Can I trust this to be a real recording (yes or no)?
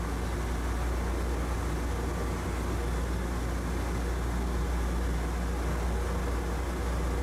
yes